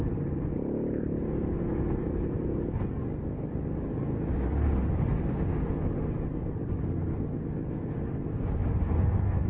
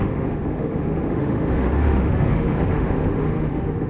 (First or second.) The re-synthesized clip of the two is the second